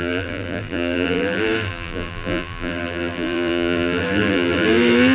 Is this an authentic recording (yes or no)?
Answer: no